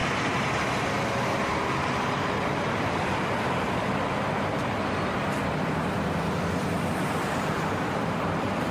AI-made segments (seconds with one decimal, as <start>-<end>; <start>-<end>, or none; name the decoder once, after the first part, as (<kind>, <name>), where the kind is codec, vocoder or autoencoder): none